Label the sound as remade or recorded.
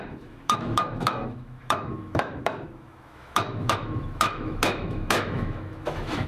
remade